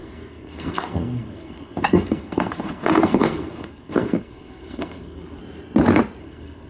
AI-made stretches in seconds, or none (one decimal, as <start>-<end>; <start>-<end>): 0.0-5.4; 6.2-6.7